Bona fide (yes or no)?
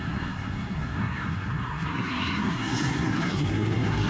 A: no